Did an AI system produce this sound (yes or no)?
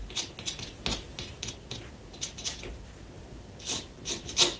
no